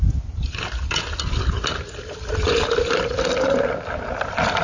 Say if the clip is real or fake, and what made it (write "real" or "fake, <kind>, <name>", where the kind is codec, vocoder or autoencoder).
real